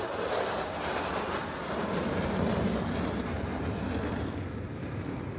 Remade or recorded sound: remade